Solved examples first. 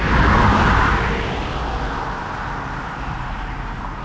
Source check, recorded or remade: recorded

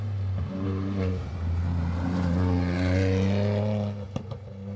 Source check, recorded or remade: recorded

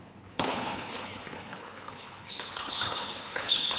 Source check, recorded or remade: remade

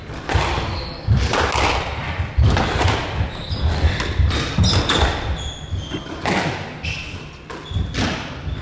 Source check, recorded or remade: recorded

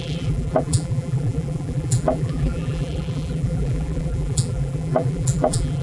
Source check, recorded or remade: remade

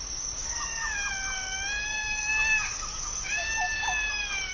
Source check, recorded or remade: remade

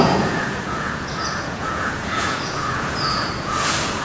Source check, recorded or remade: remade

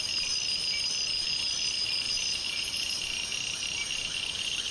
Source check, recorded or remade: recorded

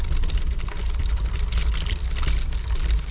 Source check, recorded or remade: recorded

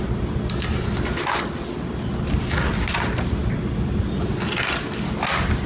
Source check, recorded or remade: recorded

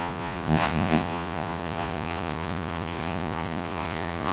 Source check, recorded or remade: remade